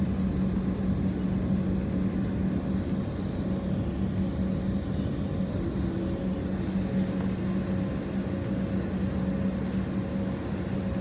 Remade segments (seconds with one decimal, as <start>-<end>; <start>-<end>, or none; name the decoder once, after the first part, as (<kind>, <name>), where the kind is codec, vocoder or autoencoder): none